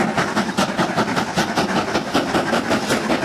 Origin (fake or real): real